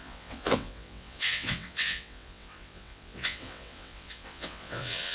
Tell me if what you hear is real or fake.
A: fake